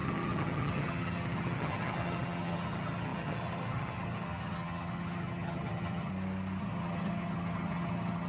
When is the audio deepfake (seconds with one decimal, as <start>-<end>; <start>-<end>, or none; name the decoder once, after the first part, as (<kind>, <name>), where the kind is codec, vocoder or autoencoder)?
0.0-6.1 (vocoder, HiFi-GAN); 6.6-8.3